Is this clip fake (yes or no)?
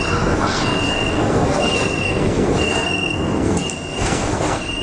yes